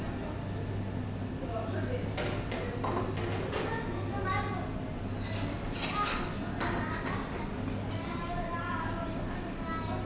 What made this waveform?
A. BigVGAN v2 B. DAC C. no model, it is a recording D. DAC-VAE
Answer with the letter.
C